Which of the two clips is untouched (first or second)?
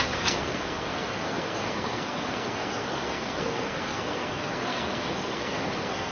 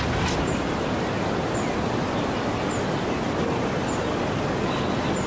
second